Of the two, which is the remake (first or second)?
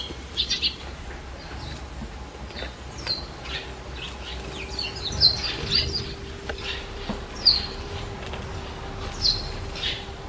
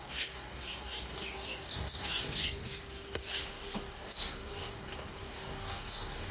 second